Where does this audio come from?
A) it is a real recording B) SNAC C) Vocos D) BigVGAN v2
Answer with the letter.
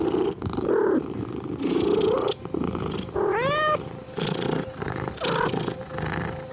A